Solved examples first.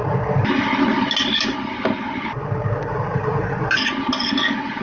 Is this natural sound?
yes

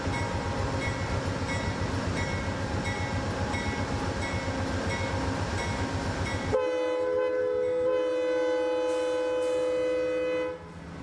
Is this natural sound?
yes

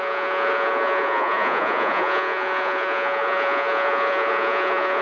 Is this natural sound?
no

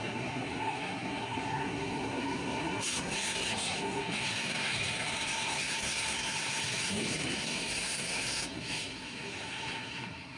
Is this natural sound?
no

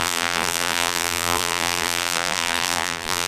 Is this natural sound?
no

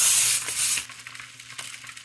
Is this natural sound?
yes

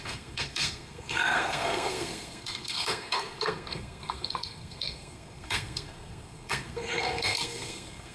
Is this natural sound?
no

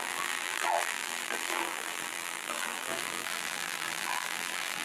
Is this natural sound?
no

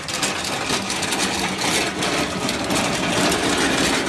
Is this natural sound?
yes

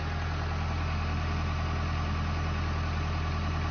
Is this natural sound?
yes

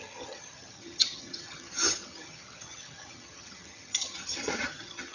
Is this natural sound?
no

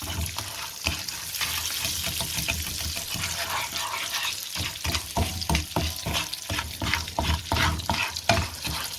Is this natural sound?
yes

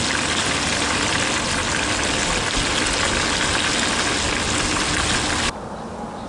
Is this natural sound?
yes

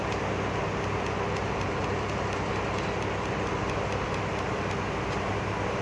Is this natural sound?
yes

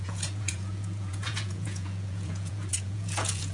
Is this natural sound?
no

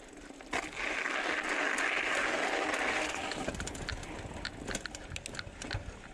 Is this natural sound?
yes